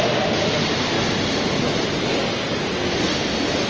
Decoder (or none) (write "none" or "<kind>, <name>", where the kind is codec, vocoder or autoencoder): none